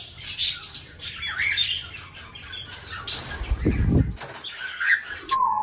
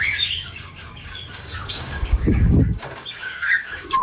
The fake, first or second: second